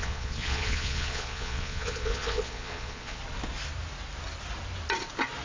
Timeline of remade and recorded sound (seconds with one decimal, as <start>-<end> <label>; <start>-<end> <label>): 0.0-3.2 remade; 3.2-5.4 recorded